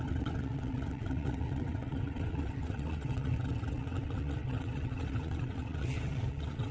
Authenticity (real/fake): fake